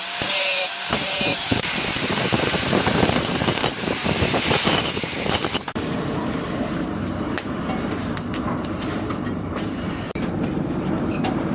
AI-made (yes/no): yes